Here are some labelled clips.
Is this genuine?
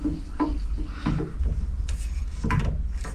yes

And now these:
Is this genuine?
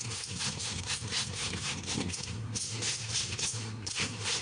no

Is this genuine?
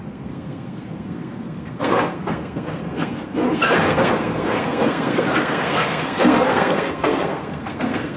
no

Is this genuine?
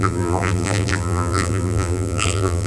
no